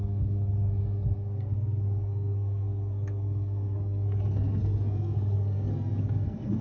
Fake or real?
fake